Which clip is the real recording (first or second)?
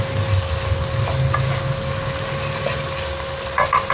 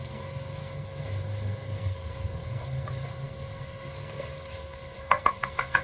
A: first